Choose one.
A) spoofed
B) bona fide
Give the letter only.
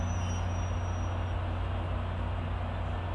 B